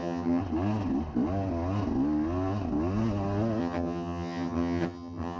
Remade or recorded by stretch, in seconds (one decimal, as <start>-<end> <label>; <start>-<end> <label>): 0.0-0.4 remade; 0.4-3.6 recorded; 3.6-5.4 remade